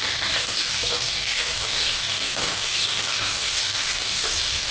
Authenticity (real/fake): fake